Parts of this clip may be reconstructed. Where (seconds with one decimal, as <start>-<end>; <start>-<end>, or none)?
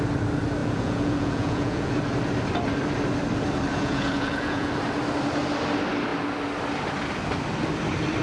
0.6-1.9; 3.7-4.7